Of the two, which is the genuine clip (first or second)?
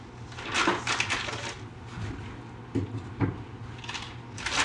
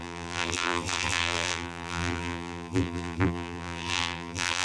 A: first